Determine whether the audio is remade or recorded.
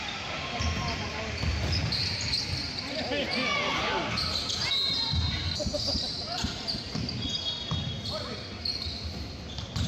recorded